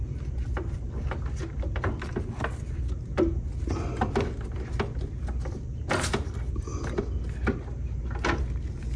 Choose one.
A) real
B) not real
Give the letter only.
A